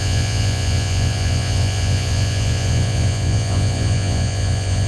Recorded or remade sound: remade